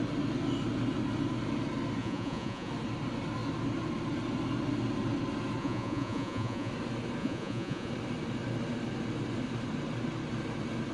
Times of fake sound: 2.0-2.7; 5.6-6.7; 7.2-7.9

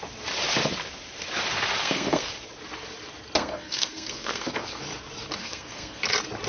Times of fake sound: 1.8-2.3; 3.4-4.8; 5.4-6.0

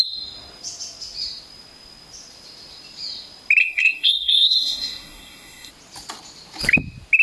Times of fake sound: 3.6-5.7